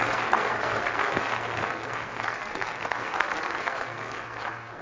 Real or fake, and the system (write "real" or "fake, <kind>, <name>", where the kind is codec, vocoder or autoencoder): fake, codec, SNAC